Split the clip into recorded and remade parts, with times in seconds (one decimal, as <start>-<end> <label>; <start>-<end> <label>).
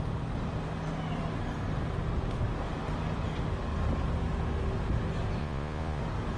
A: 0.0-5.4 recorded; 5.4-6.0 remade; 6.0-6.4 recorded